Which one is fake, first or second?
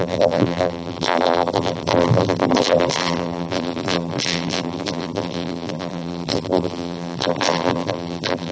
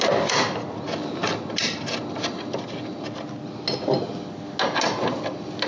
first